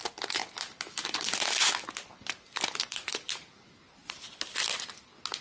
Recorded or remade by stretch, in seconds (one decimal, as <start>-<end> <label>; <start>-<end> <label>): 0.0-0.4 recorded; 0.4-3.6 remade; 3.6-5.4 recorded